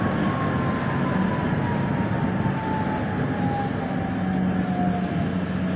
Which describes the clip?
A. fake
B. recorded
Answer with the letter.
B